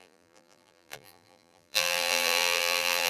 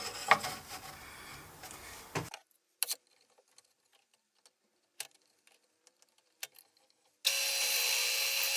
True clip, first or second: second